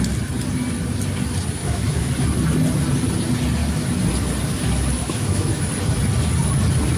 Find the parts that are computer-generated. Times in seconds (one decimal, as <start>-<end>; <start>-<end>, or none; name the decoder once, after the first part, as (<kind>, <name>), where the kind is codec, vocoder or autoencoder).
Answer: 1.6-2.1 (autoencoder, DAC-VAE); 5.0-5.7